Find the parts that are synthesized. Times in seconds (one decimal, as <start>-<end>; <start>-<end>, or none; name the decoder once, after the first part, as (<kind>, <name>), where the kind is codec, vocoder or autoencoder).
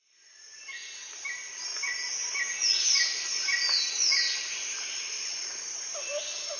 none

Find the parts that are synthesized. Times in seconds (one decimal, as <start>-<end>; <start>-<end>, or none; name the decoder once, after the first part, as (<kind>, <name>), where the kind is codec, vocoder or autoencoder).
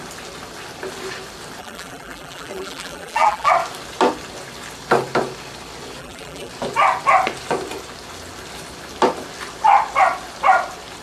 1.6-3.5 (vocoder, BigVGAN v2); 6.0-6.5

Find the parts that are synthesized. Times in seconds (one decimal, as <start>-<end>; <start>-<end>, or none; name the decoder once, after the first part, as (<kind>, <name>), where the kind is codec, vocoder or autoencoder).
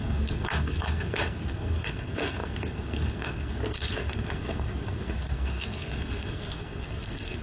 0.0-7.4 (codec, SNAC)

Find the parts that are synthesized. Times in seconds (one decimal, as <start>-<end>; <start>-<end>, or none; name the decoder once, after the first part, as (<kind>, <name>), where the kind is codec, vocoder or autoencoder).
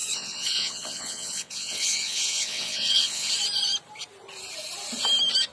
0.0-3.3 (vocoder, WaveNeXt)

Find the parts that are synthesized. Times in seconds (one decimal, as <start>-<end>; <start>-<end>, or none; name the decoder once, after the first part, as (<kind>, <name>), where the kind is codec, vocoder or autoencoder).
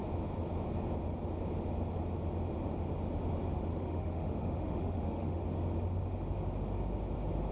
3.7-5.4 (autoencoder, DAC-VAE)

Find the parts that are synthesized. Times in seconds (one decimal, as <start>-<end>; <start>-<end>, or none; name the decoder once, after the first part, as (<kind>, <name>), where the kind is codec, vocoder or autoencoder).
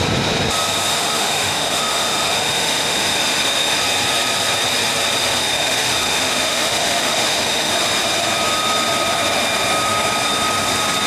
0.9-3.8 (autoencoder, DAC-VAE); 5.4-7.7